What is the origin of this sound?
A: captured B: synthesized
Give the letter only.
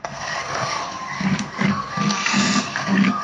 B